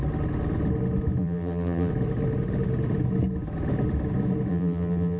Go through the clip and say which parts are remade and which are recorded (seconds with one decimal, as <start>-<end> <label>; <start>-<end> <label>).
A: 0.0-1.2 recorded; 1.2-1.9 remade; 1.9-4.5 recorded; 4.5-5.2 remade